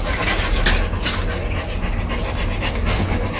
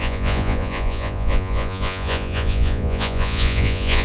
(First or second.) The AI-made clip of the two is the second